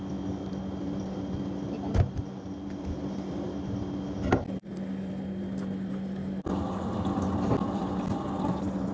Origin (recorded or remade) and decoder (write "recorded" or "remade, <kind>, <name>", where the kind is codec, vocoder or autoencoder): recorded